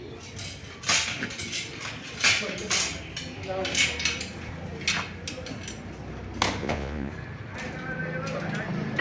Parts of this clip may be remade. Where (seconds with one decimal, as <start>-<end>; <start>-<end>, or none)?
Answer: 6.6-7.1

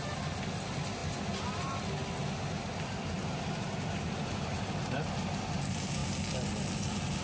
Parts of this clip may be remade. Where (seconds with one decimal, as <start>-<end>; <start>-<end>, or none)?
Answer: none

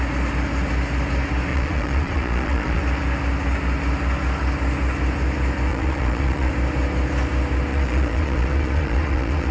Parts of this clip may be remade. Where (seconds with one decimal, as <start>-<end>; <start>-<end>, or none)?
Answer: 1.5-2.8; 5.7-6.5; 7.7-9.5